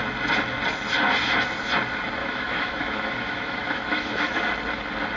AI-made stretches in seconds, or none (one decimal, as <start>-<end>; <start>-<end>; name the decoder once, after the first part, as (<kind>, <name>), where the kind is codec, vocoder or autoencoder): 2.2-4.4 (autoencoder, DAC-VAE)

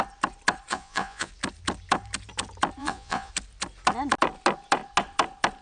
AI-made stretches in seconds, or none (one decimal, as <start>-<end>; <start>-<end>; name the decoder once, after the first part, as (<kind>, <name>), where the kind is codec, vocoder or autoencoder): 0.7-1.3 (vocoder, Vocos); 2.8-3.3

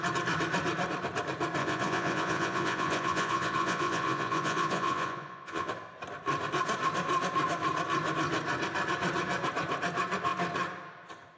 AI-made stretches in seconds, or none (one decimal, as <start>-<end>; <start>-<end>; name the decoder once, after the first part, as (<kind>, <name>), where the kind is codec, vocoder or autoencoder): 1.6-5.7 (vocoder, Vocos)

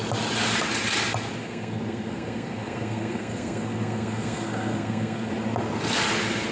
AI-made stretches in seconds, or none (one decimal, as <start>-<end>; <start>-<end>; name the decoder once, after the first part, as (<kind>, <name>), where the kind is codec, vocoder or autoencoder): 1.4-5.3 (codec, SNAC)

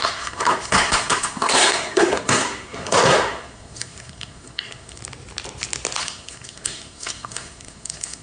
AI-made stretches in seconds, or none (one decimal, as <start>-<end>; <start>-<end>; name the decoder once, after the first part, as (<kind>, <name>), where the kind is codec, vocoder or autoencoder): 0.0-5.0 (codec, SNAC); 6.0-8.2

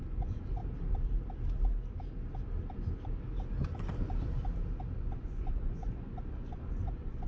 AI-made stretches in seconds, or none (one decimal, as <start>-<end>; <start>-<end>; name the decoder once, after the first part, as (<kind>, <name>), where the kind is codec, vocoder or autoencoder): 0.0-0.6 (vocoder, Vocos); 5.0-7.3